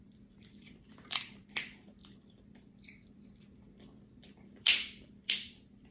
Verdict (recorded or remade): remade